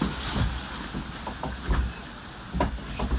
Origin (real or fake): real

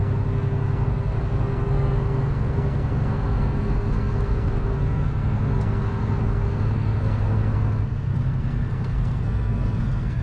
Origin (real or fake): fake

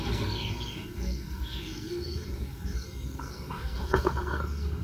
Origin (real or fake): fake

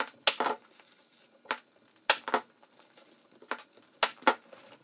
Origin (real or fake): real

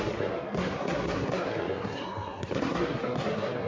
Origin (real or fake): fake